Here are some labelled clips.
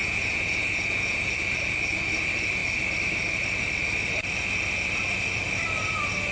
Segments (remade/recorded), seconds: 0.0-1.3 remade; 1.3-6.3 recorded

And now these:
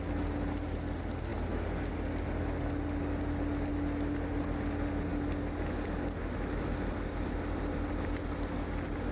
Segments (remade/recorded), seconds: 0.0-9.1 recorded